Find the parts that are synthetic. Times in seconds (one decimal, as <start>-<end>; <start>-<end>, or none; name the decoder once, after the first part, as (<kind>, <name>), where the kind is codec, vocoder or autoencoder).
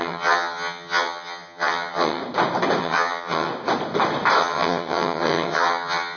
0.0-2.2 (vocoder, HiFi-GAN); 2.8-3.5; 4.4-6.2